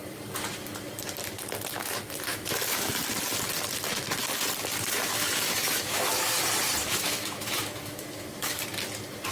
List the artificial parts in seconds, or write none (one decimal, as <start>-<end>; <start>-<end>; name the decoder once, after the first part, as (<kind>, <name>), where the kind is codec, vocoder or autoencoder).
2.3-2.9 (autoencoder, DAC-VAE); 5.1-6.3; 6.8-8.6